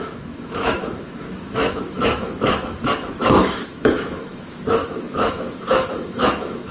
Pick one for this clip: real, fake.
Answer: fake